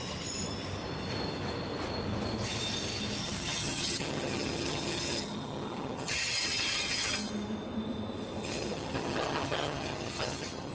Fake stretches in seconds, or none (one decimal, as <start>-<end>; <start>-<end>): 3.2-7.3; 8.4-10.7